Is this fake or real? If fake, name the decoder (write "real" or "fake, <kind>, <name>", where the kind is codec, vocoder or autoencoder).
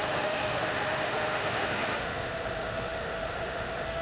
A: fake, autoencoder, DAC-VAE